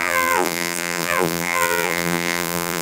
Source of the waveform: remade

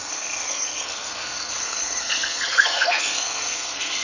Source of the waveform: remade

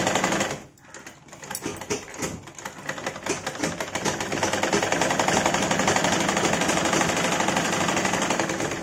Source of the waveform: recorded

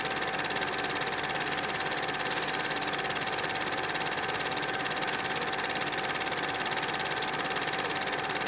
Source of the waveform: recorded